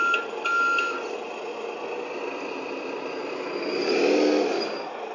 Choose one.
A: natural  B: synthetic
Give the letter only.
A